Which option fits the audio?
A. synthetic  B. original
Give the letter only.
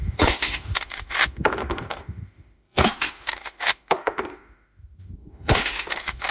A